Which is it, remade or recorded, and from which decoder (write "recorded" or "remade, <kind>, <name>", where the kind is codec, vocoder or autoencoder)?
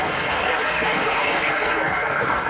remade, codec, SNAC